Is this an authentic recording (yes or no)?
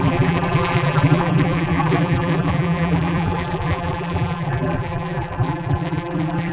no